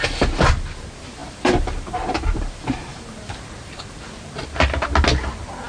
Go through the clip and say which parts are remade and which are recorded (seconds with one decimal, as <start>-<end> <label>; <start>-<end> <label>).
0.0-1.2 recorded; 1.2-4.6 remade; 4.6-5.7 recorded